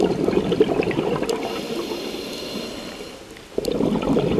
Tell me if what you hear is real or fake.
real